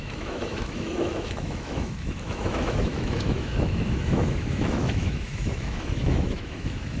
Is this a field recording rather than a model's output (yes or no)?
no